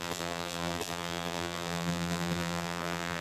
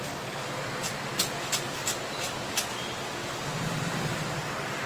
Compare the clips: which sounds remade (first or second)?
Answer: first